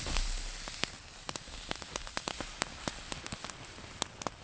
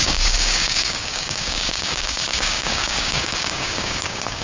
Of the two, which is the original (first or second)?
first